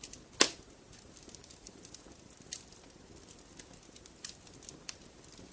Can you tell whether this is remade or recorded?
recorded